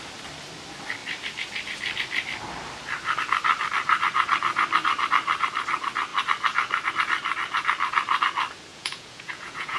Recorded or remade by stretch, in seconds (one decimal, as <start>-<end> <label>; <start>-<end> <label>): 0.0-8.7 recorded; 8.7-9.8 remade